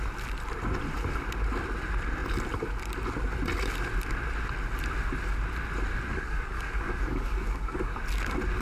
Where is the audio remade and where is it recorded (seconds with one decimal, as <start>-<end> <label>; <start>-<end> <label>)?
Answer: 0.0-6.1 recorded; 6.1-8.0 remade; 8.0-8.6 recorded